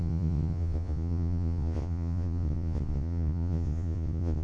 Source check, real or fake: fake